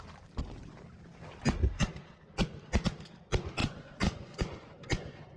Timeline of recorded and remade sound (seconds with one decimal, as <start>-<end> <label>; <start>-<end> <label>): 0.0-3.6 recorded; 3.6-5.4 remade